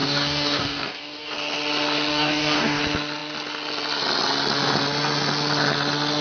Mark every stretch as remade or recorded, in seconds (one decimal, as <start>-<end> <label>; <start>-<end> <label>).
0.0-1.3 remade; 1.3-2.1 recorded; 2.1-2.8 remade; 2.8-6.2 recorded

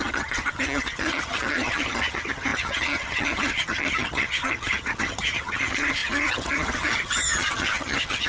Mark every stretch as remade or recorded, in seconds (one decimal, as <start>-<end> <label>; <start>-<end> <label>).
0.0-8.3 remade